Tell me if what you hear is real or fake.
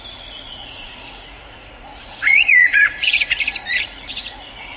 fake